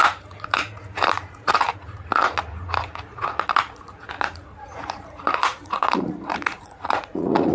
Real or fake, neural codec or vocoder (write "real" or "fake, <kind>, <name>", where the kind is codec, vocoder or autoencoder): fake, vocoder, Vocos